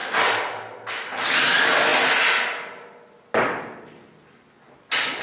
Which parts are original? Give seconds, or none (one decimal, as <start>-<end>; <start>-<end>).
0.0-0.9; 1.9-5.2